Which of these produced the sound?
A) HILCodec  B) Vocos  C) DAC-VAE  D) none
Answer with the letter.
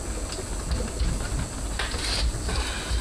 D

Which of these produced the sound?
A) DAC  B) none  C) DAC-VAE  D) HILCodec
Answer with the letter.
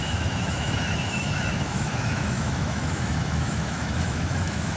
C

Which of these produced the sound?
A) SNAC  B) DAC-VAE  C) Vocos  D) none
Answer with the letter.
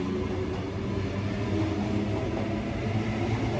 D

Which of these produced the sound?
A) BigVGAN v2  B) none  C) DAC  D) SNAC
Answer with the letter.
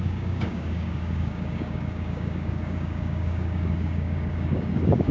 C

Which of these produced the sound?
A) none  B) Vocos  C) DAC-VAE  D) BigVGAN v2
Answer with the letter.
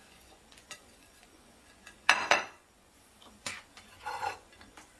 B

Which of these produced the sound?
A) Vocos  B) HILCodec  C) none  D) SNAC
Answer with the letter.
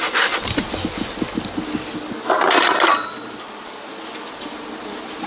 C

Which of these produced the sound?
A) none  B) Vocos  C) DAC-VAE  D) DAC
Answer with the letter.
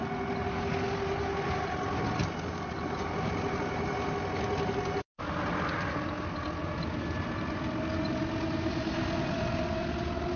A